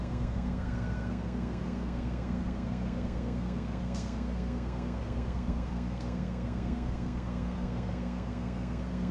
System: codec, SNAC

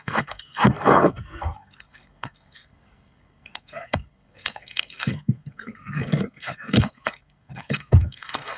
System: codec, SNAC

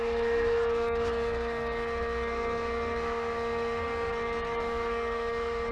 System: codec, SNAC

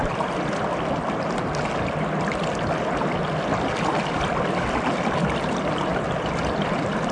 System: none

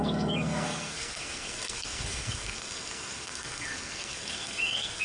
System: codec, SNAC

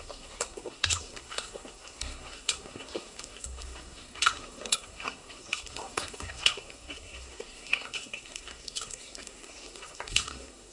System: codec, SNAC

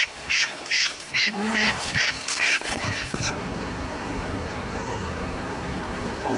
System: codec, SNAC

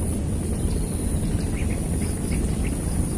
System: none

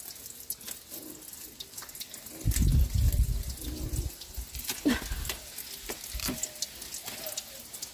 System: none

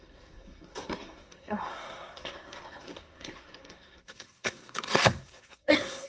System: codec, SNAC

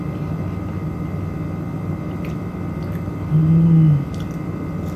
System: none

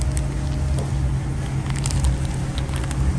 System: none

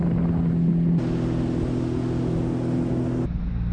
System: none